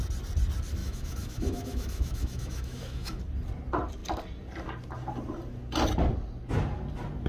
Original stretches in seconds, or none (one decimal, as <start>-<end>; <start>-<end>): 0.0-0.8; 3.2-7.3